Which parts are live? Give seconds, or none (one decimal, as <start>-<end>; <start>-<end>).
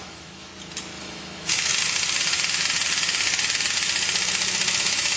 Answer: 0.5-1.0; 1.7-4.8